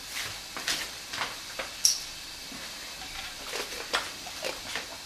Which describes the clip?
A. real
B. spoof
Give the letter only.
A